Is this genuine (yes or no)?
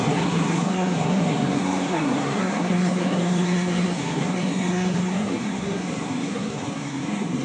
no